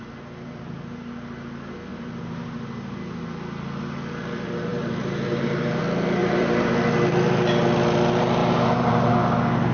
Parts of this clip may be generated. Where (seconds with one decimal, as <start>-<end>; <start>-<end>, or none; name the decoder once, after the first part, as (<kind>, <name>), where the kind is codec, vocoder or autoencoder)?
4.7-5.8 (vocoder, BigVGAN v2); 6.2-6.7; 8.4-9.1

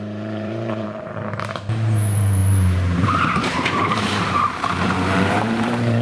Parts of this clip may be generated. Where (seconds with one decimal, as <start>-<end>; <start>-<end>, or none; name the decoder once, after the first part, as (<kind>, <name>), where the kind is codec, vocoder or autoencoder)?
0.0-6.0 (vocoder, BigVGAN v2)

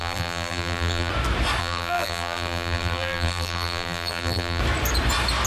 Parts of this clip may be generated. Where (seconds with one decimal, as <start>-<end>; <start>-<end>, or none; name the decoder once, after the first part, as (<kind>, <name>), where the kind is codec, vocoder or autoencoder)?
0.0-1.1 (vocoder, BigVGAN v2); 1.6-4.6

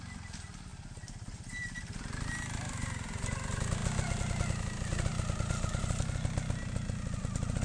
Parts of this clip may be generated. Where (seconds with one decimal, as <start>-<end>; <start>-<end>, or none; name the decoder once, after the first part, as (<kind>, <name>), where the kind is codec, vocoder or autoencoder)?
none

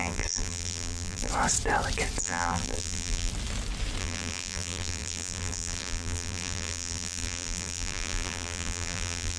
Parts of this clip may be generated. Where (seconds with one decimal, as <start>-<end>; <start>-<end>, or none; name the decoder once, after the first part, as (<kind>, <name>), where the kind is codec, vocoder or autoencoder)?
0.0-1.3 (vocoder, BigVGAN v2); 2.2-3.3; 4.0-9.4